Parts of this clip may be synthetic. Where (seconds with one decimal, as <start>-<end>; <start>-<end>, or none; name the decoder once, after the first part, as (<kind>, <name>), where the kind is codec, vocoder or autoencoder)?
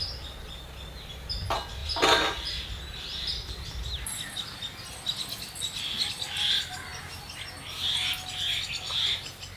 none